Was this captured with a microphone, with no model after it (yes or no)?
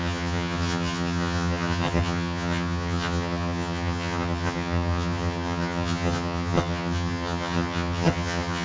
no